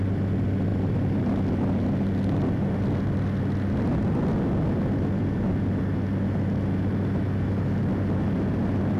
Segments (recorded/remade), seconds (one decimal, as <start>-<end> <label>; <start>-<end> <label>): 0.0-9.0 recorded